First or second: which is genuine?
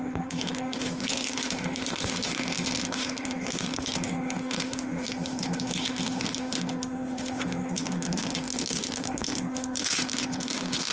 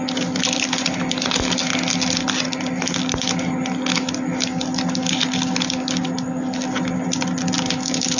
second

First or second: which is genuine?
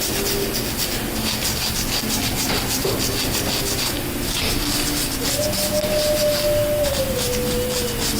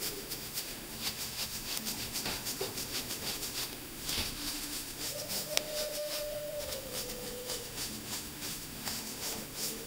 first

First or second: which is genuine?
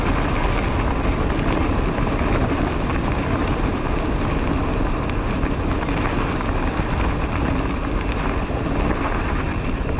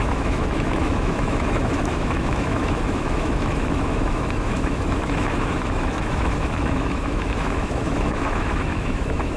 first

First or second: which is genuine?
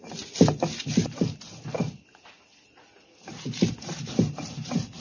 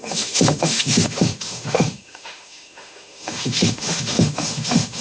first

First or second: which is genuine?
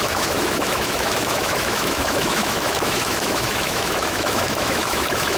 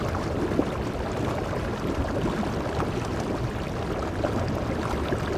second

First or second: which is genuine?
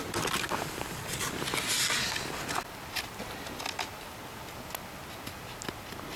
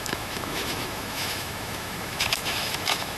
first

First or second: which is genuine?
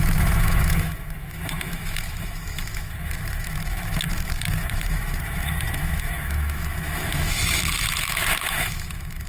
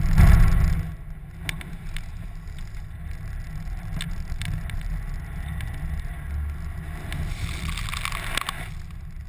second